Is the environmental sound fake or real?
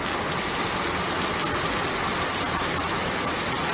real